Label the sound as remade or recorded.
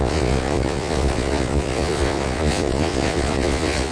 remade